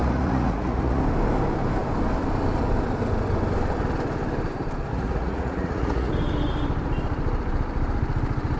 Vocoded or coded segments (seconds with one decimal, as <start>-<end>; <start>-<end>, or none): 0.0-1.0; 4.9-6.1

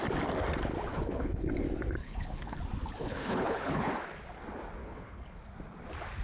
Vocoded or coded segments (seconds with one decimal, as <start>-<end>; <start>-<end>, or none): 0.9-1.5; 2.0-2.6; 3.0-3.9; 4.8-5.4

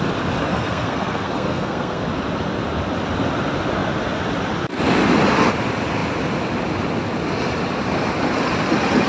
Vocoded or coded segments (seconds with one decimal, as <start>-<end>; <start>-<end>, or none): 0.5-2.0